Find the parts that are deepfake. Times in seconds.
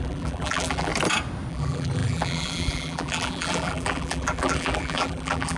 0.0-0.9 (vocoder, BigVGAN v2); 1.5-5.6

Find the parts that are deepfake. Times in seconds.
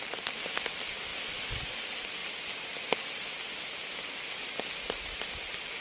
none